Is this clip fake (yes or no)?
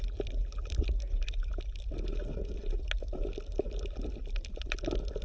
no